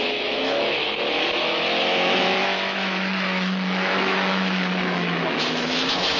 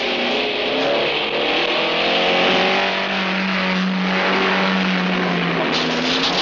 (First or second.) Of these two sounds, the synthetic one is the first